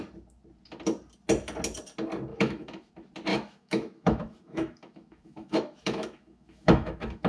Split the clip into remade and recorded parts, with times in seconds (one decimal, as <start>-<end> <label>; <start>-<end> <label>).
0.0-2.3 recorded; 2.3-2.9 remade; 2.9-3.3 recorded; 3.3-7.3 remade